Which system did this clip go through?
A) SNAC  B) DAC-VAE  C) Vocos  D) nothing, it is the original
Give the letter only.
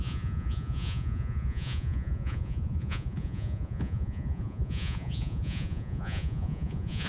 C